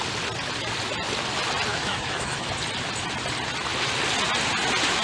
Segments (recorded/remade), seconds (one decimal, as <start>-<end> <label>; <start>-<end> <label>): 0.0-1.7 recorded; 1.7-2.5 remade; 2.5-5.0 recorded